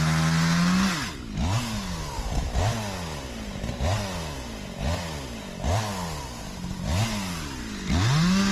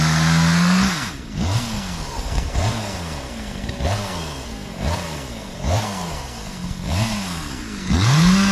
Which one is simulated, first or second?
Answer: second